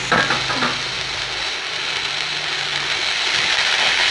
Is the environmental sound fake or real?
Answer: real